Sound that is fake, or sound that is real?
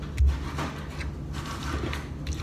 real